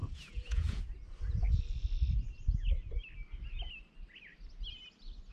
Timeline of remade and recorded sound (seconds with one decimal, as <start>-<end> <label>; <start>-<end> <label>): 0.0-0.8 remade; 0.8-5.3 recorded